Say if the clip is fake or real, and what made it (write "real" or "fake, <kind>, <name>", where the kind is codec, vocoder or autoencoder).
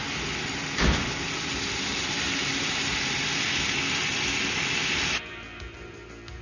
real